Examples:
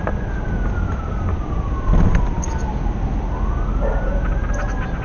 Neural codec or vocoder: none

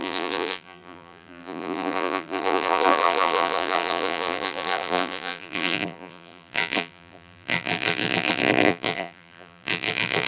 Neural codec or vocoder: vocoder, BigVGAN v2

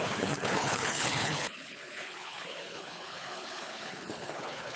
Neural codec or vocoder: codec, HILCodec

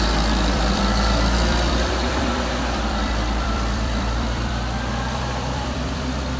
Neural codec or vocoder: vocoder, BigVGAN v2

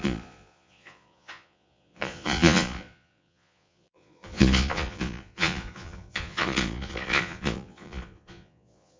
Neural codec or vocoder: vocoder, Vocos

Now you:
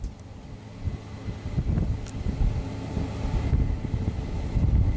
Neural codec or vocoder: none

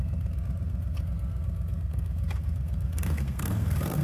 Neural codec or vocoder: codec, SNAC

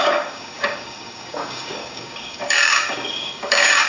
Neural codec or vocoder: codec, DAC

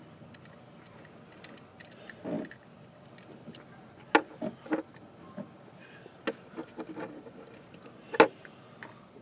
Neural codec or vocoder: none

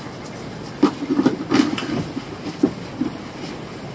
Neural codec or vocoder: none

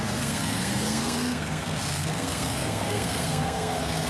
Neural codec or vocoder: codec, SNAC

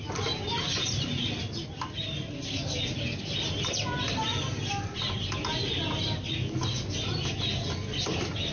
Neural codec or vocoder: none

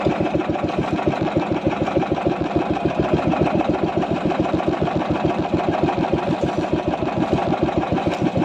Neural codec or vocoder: vocoder, BigVGAN v2